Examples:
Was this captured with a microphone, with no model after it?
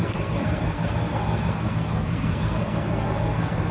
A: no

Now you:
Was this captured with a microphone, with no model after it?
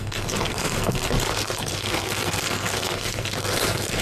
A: no